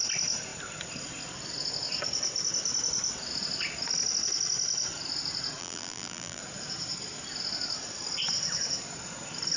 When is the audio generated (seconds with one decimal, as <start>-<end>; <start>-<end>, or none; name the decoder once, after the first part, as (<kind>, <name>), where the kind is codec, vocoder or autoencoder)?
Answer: 5.6-6.4 (vocoder, BigVGAN v2)